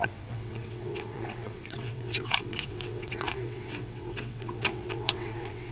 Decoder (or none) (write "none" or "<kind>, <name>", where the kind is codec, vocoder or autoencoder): vocoder, WaveNeXt